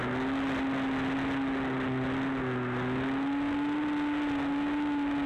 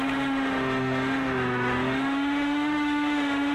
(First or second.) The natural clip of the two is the first